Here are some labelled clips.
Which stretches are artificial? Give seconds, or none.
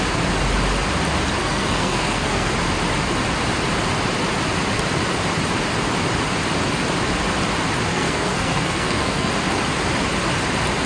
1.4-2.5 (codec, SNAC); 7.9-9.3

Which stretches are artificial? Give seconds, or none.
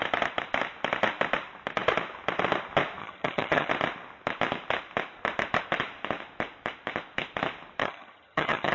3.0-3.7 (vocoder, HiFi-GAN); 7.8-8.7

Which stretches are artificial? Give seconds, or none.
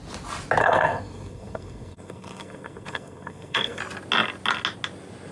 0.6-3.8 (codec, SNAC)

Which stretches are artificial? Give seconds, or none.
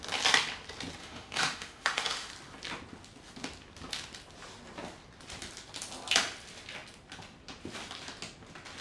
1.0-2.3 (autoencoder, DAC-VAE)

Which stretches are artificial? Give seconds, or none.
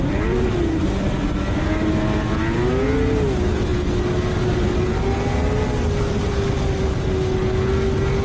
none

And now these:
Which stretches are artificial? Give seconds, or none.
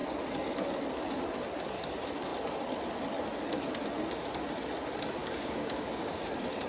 5.2-6.2 (codec, DAC)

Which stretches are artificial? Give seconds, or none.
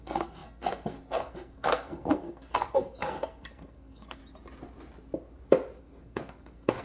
0.0-4.2 (codec, SNAC); 5.8-6.8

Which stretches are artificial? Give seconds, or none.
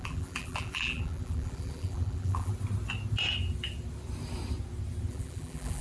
0.0-2.5 (vocoder, BigVGAN v2); 5.1-5.8